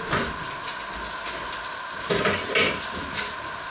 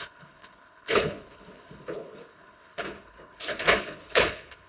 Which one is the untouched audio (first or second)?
first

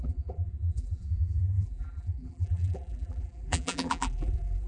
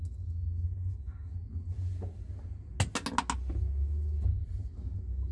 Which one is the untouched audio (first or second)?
second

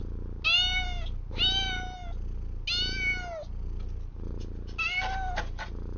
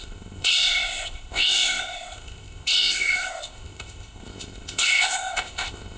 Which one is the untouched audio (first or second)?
first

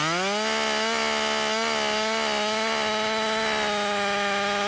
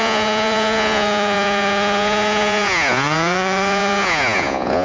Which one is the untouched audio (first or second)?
first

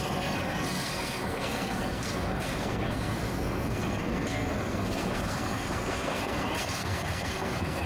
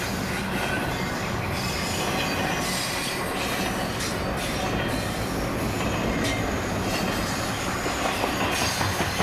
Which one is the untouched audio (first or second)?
second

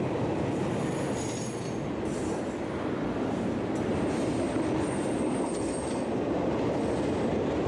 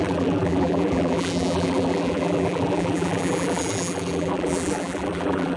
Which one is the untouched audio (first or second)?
first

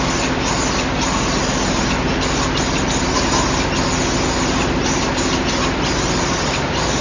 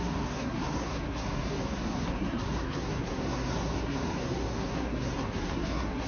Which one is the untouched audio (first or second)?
first